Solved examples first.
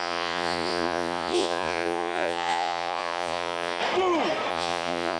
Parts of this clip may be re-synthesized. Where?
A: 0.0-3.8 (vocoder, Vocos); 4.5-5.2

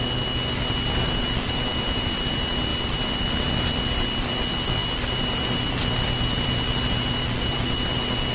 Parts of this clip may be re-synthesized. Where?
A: none

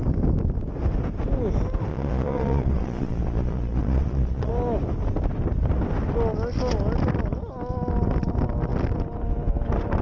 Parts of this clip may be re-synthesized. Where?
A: 1.9-4.5 (vocoder, Vocos)

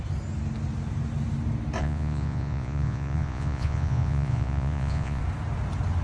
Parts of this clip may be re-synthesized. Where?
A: 1.8-5.2 (vocoder, Vocos)

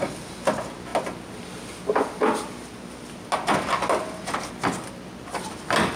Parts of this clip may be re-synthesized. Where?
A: none